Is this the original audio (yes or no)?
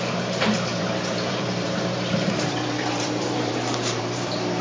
no